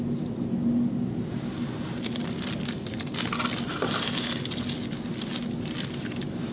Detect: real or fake real